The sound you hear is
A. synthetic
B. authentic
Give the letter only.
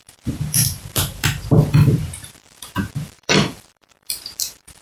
A